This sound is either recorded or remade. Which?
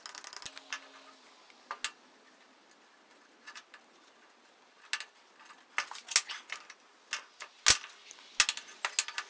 recorded